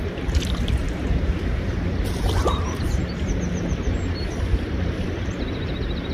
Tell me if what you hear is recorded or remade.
remade